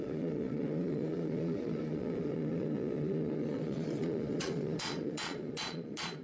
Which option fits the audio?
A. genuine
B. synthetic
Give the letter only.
B